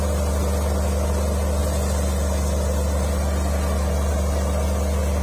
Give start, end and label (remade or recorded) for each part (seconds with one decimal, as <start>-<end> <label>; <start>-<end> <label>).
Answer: 0.0-5.2 recorded